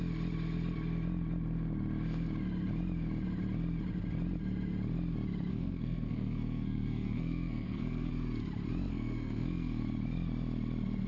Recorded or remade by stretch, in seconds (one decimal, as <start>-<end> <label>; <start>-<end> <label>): 0.0-5.5 recorded; 5.5-8.1 remade; 8.1-8.9 recorded; 8.9-9.8 remade; 9.8-11.1 recorded